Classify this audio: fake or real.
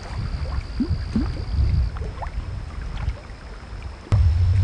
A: real